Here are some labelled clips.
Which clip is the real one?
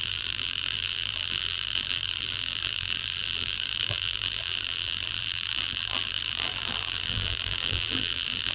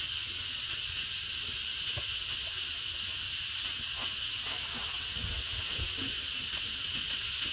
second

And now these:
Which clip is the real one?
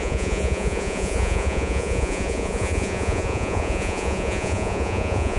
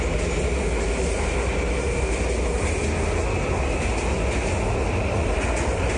second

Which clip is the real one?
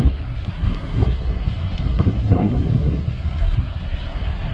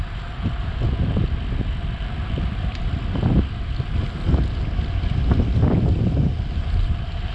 second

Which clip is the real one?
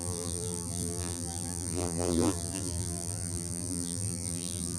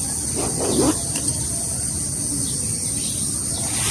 second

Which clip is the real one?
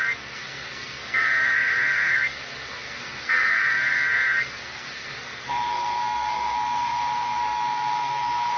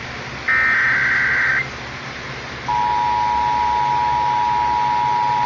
second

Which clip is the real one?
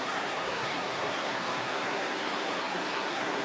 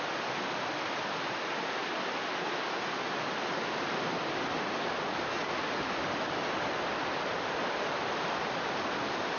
second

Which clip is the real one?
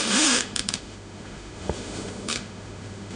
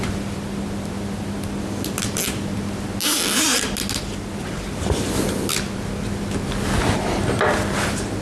second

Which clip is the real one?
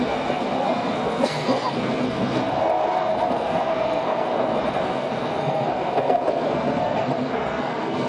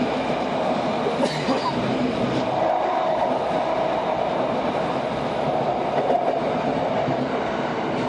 second